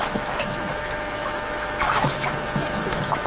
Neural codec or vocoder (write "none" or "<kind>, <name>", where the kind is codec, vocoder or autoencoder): autoencoder, DAC-VAE